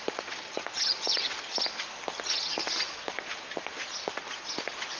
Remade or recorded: recorded